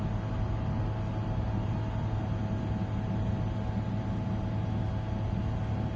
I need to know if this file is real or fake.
real